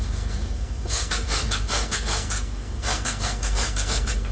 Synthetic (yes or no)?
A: yes